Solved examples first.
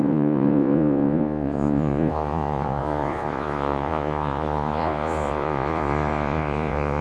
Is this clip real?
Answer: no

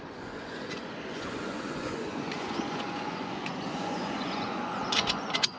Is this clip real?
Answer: no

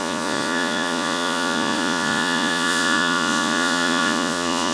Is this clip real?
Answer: no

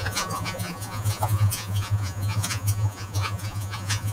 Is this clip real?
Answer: no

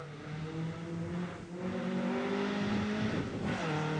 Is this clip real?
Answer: yes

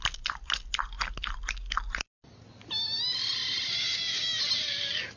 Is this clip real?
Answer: yes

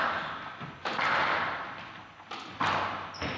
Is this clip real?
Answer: yes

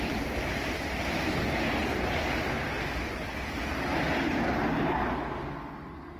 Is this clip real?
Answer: yes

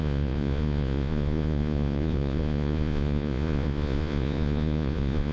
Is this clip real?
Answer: no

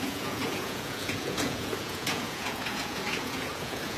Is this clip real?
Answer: no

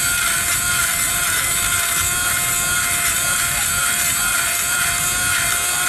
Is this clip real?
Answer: yes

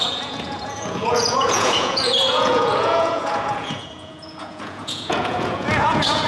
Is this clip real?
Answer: no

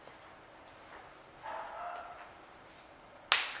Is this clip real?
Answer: yes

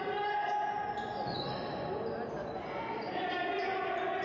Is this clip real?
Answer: yes